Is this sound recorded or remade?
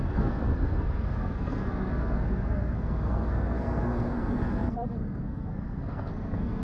remade